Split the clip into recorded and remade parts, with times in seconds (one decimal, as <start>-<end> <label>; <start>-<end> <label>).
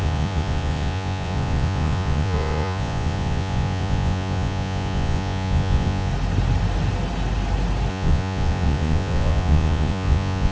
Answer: 0.0-6.1 remade; 6.1-7.9 recorded; 7.9-10.5 remade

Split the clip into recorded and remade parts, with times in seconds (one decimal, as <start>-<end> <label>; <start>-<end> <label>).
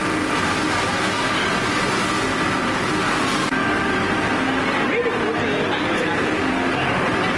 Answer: 0.0-7.4 recorded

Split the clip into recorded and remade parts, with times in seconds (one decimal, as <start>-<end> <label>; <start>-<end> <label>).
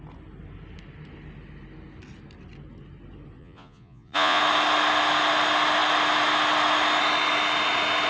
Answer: 0.0-3.4 recorded; 3.4-4.4 remade; 4.4-8.1 recorded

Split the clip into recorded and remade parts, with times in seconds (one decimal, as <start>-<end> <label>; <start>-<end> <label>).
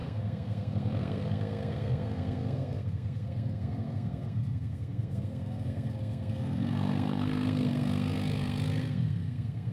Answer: 0.0-9.7 remade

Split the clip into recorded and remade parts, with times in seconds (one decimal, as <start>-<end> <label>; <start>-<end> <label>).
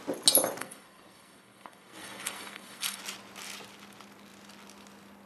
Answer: 0.0-0.6 recorded; 0.6-3.0 remade; 3.0-5.3 recorded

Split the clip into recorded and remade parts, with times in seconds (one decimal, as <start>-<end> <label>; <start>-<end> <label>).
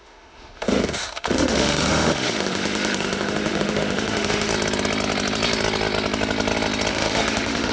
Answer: 0.0-4.5 remade; 4.5-6.9 recorded; 6.9-7.7 remade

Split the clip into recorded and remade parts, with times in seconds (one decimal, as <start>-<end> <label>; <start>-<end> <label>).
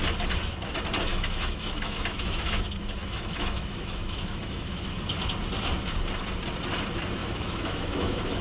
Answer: 0.0-1.1 recorded; 1.1-2.6 remade; 2.6-3.0 recorded; 3.0-5.0 remade; 5.0-7.2 recorded; 7.2-8.4 remade